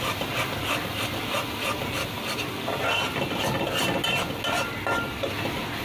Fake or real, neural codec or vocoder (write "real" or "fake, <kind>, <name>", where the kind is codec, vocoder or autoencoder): real